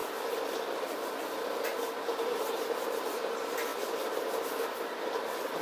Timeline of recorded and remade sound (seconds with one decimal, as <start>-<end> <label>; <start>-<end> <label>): 0.0-3.7 recorded; 3.7-5.6 remade